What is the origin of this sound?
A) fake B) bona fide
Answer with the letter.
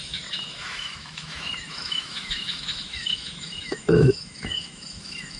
A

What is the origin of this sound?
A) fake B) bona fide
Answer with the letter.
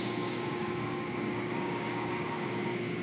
A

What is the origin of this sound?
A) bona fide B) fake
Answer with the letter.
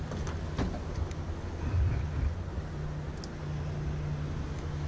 A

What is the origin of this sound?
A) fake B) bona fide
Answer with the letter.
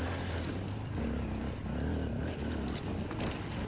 B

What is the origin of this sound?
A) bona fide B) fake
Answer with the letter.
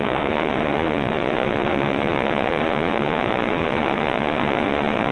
B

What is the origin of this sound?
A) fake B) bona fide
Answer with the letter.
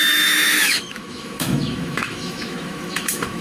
A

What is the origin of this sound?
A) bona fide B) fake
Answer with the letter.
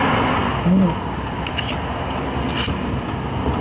A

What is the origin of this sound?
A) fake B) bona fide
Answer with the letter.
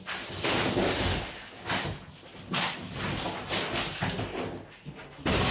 B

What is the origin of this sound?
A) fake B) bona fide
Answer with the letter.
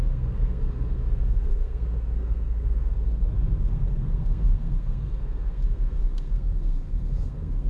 A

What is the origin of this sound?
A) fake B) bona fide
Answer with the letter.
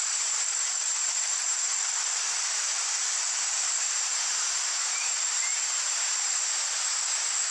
A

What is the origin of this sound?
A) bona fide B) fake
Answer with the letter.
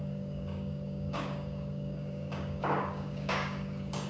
B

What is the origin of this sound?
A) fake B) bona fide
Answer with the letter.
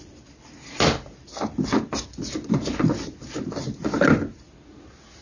B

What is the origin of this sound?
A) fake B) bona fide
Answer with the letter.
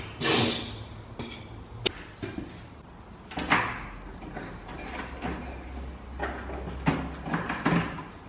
B